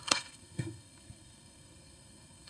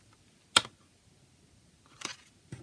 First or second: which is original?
second